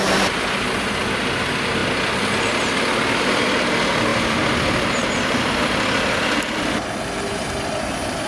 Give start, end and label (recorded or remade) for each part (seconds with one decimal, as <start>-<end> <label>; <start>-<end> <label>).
0.0-4.1 recorded; 4.1-5.4 remade; 5.4-8.3 recorded